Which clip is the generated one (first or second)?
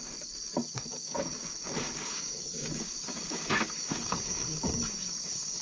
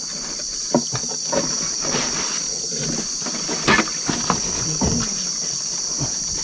first